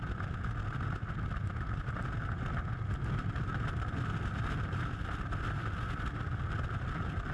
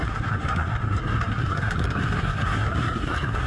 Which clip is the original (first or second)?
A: first